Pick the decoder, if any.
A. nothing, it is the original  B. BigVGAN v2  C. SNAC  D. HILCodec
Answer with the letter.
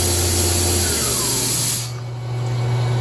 A